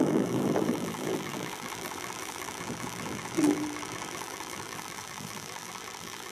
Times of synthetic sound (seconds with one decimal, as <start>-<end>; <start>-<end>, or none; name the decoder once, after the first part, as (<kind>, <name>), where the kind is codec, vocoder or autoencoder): 0.0-6.3 (vocoder, BigVGAN v2)